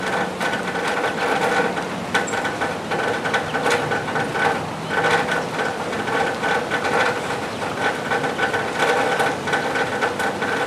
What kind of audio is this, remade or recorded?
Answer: recorded